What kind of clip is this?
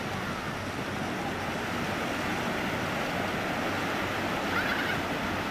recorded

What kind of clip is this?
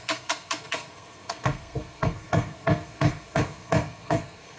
remade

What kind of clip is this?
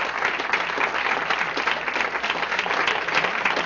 recorded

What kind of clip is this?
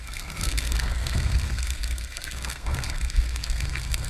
remade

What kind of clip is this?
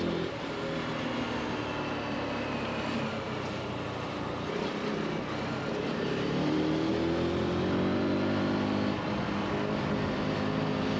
recorded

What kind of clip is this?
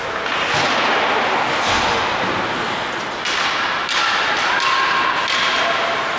recorded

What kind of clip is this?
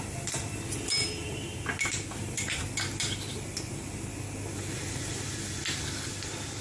recorded